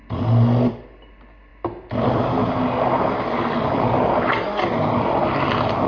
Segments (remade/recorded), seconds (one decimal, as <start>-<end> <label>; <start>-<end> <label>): 0.0-5.9 recorded

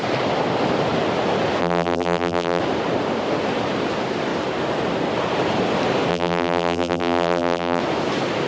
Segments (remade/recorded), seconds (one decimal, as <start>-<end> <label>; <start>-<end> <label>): 0.0-1.6 recorded; 1.6-2.6 remade; 2.6-6.1 recorded; 6.1-7.8 remade; 7.8-8.5 recorded

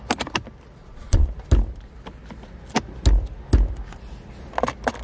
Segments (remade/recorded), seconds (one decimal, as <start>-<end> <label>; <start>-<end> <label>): 0.0-0.8 recorded; 0.8-1.3 remade; 1.3-5.0 recorded

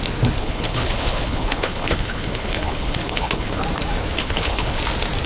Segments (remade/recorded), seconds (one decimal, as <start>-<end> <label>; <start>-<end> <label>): 0.0-0.4 recorded; 0.4-3.6 remade; 3.6-4.2 recorded; 4.2-4.8 remade; 4.8-5.3 recorded

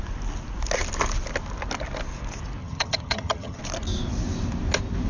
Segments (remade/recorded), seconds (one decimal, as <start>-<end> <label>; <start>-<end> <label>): 0.0-2.6 recorded; 2.6-3.6 remade; 3.6-5.1 recorded

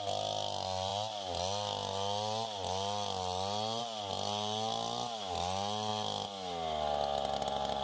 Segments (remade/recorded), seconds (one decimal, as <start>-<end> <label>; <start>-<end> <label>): 0.0-7.8 recorded